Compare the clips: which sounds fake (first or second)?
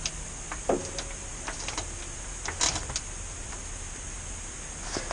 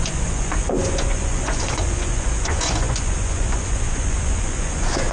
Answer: second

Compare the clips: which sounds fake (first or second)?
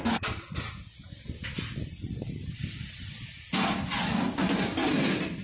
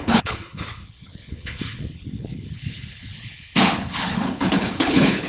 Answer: second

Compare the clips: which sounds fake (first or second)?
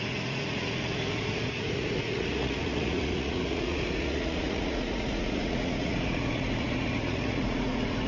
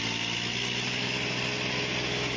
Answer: first